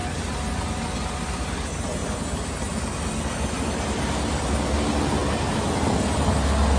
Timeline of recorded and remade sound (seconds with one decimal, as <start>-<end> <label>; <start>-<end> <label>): 0.0-6.8 recorded